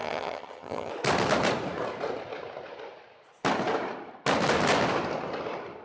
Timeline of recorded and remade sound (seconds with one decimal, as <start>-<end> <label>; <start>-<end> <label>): 0.0-0.9 remade; 0.9-5.8 recorded